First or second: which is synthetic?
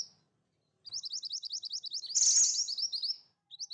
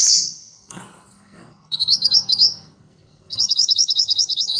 second